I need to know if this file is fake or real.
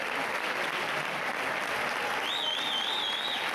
real